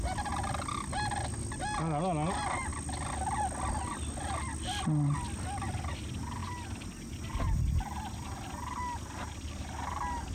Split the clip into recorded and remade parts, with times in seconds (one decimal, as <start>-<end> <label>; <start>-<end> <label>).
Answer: 0.0-10.3 recorded